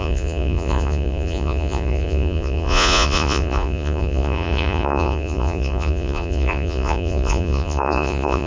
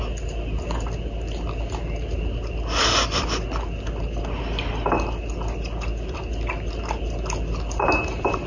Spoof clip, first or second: first